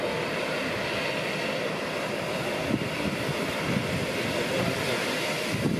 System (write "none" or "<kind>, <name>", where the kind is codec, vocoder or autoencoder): none